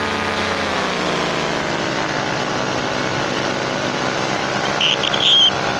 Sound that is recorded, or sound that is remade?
recorded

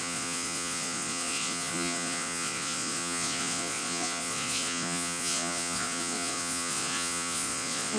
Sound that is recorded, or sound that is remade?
remade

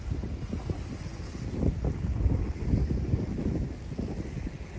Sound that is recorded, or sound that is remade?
recorded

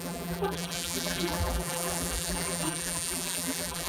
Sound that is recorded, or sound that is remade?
remade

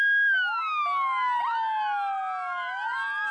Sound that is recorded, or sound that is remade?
recorded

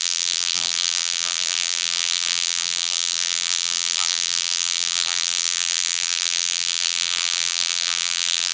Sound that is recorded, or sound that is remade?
remade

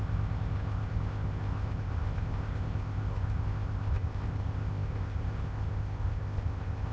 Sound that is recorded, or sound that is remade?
remade